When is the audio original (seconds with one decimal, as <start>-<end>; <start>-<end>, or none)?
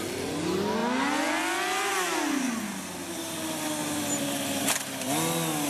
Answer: 0.0-5.7